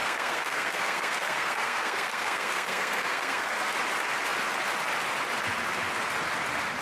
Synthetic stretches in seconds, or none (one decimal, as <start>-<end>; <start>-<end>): 0.0-3.7